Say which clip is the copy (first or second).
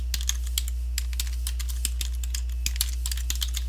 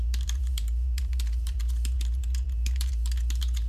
second